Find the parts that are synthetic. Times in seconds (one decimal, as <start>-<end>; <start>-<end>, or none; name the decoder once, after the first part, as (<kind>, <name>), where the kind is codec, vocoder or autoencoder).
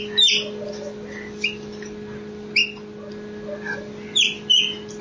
none